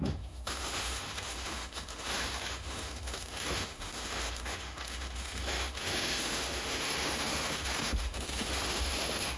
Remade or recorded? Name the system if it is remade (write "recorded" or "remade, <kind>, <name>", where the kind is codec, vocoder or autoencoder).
remade, autoencoder, DAC-VAE